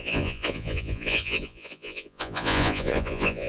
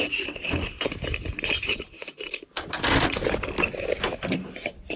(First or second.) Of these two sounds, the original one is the second